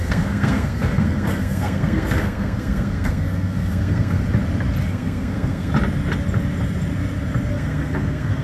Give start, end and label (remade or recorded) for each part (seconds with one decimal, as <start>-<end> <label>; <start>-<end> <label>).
0.0-4.2 remade; 4.2-4.9 recorded; 4.9-5.7 remade; 5.7-7.5 recorded; 7.5-8.4 remade